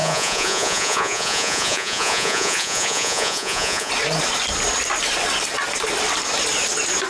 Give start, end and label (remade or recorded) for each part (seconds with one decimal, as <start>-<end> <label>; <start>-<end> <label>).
0.0-3.9 remade; 3.9-7.1 recorded

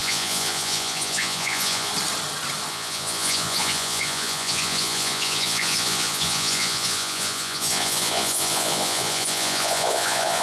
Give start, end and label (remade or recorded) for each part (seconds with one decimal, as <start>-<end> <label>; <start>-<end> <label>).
0.0-1.9 remade; 1.9-2.7 recorded; 2.7-10.4 remade

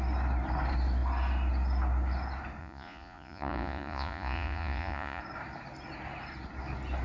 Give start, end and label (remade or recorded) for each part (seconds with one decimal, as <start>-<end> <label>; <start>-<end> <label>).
0.0-2.6 recorded; 2.6-5.2 remade; 5.2-7.0 recorded

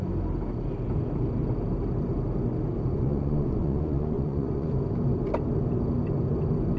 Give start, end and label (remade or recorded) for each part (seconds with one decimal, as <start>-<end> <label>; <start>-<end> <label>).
0.0-2.9 recorded; 2.9-4.7 remade; 4.7-6.8 recorded

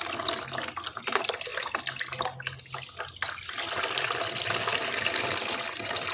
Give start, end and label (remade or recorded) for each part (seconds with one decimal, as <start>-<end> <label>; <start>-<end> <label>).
0.0-6.1 recorded